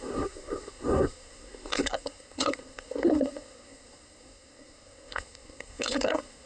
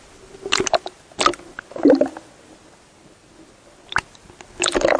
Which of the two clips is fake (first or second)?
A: first